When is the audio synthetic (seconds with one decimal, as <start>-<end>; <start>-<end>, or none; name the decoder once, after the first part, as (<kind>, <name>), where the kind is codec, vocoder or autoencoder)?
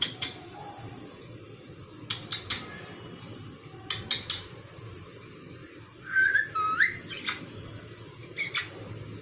none